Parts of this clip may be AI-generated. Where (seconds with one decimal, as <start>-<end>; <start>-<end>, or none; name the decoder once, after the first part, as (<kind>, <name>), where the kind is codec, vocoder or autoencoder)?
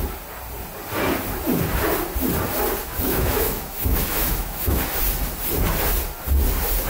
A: 2.8-4.8 (autoencoder, DAC-VAE)